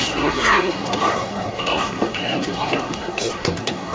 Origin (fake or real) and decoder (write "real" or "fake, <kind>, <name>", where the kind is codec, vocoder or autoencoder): fake, codec, SNAC